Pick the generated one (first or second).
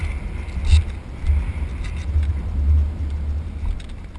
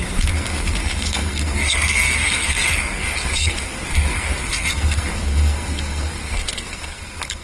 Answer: second